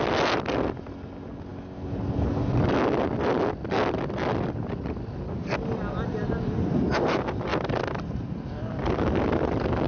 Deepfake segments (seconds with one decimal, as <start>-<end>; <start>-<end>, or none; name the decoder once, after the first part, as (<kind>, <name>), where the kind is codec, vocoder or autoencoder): none